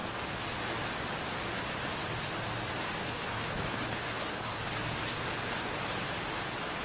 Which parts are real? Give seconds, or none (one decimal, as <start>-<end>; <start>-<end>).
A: 0.0-3.0; 4.6-6.8